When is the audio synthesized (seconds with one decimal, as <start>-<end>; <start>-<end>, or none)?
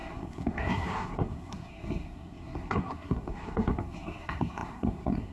0.0-5.3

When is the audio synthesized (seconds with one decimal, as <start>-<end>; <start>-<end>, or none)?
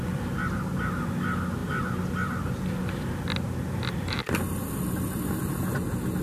none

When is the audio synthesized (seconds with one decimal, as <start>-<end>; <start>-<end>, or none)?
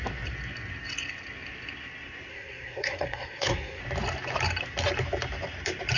2.3-3.8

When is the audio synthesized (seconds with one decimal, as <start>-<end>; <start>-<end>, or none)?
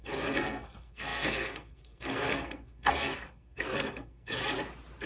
0.0-4.4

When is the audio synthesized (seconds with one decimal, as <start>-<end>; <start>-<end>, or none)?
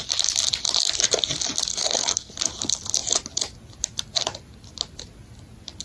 1.7-2.3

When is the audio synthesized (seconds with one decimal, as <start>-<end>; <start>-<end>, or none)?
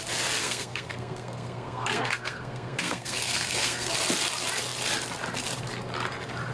0.4-3.9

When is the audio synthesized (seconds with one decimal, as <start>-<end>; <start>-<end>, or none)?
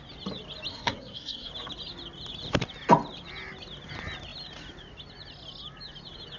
0.7-1.5